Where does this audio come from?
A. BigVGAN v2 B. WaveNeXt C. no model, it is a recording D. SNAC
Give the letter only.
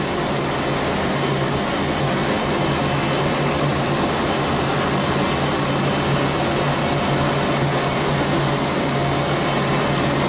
C